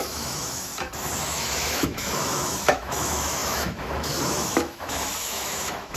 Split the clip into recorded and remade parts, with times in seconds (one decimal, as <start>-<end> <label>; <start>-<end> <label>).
0.0-0.7 remade; 0.7-1.2 recorded; 1.2-6.0 remade